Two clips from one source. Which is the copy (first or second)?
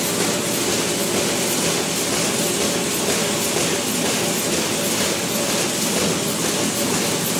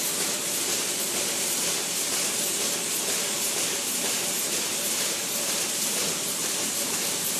second